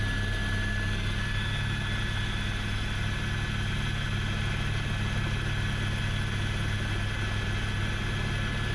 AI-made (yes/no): no